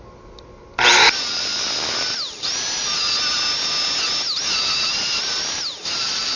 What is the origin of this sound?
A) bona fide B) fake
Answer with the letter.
A